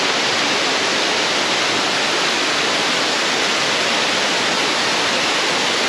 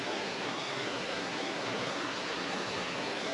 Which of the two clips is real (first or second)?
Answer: first